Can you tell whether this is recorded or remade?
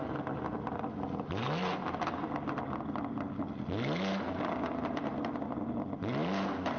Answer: recorded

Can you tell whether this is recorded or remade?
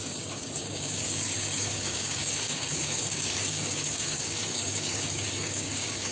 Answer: remade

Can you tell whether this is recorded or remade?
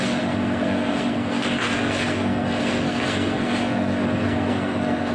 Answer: remade